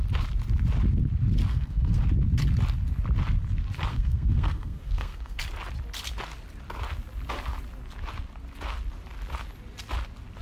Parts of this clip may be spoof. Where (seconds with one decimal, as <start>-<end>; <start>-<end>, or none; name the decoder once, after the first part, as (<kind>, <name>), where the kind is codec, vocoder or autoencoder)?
1.5-2.0 (codec, SNAC); 3.9-5.4